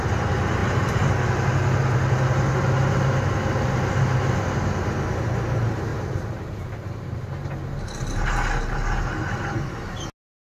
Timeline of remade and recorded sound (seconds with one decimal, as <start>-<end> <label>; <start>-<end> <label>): 0.0-5.9 recorded; 5.9-7.5 remade; 7.5-10.5 recorded